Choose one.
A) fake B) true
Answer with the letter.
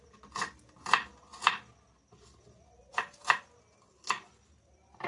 B